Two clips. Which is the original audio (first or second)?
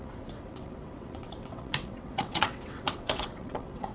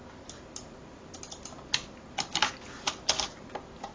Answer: second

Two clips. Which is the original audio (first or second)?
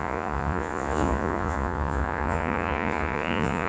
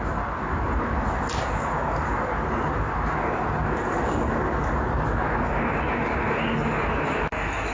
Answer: second